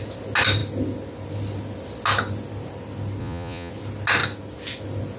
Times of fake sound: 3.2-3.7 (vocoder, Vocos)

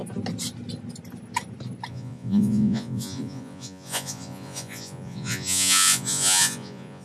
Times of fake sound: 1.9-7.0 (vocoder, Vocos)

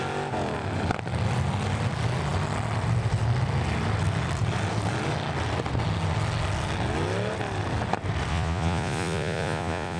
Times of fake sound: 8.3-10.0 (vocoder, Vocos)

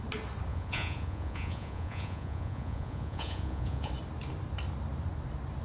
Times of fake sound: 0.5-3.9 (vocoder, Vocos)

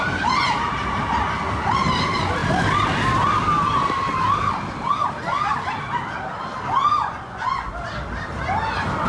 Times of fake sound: 7.0-7.7 (vocoder, Vocos)

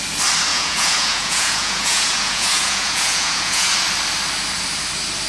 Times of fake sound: 0.5-3.7 (vocoder, Vocos)

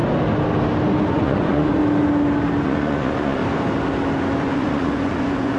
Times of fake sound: 1.1-1.8 (vocoder, Vocos); 2.6-3.4; 4.4-5.6